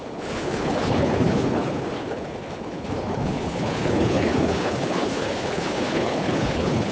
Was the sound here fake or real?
fake